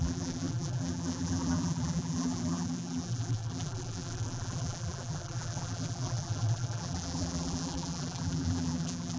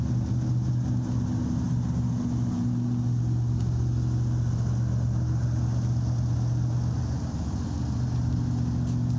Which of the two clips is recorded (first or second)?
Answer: second